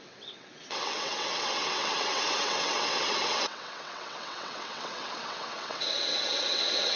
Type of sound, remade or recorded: remade